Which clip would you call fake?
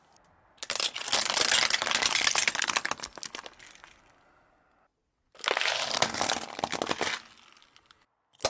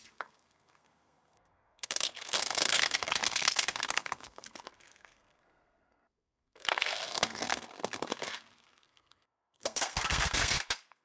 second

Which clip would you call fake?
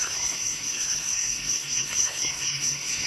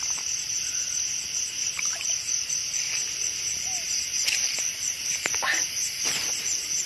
first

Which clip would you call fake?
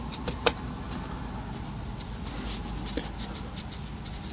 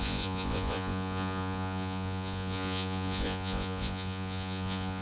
second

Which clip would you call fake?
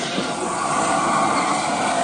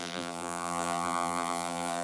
second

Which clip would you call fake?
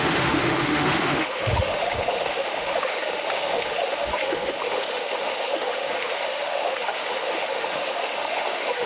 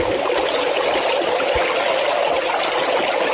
first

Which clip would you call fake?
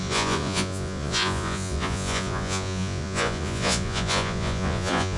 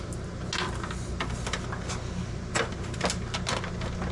first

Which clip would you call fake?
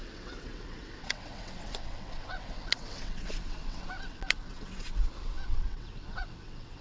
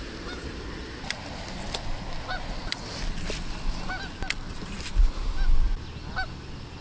first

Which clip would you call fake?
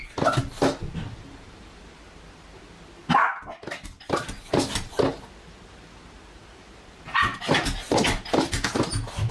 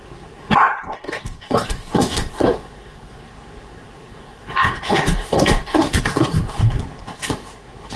second